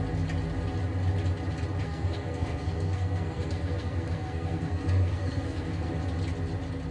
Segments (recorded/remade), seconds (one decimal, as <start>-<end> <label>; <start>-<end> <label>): 0.0-1.8 recorded; 1.8-5.9 remade; 5.9-6.9 recorded